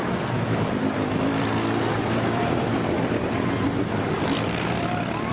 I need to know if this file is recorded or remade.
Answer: remade